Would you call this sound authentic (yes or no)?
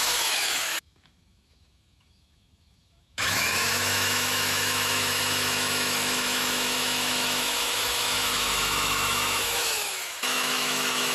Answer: no